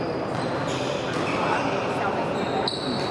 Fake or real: real